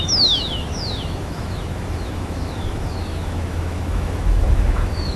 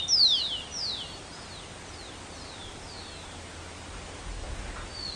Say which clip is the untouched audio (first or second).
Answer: second